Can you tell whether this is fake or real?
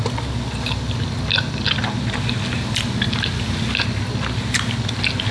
real